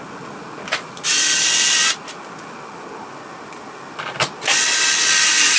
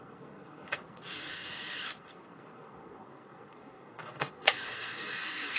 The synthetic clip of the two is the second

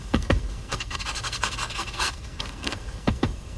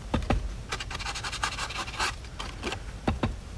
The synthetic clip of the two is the first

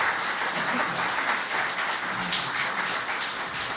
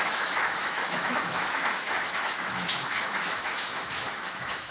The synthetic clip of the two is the second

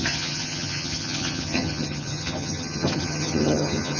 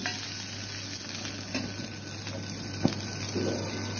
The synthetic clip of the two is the first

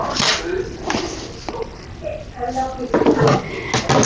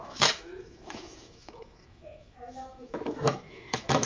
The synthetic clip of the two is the second